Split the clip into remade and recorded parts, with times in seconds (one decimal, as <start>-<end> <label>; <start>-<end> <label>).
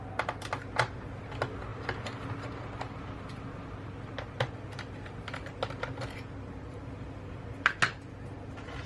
0.0-8.9 recorded